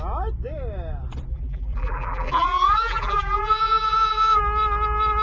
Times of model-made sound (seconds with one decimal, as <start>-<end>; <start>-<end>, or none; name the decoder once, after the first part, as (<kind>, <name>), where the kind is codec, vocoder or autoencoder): 1.3-4.4 (vocoder, BigVGAN v2)